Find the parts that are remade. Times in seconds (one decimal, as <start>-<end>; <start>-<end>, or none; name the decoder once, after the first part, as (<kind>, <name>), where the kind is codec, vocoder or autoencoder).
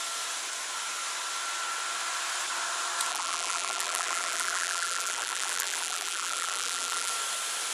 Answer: 3.1-7.1 (vocoder, BigVGAN v2)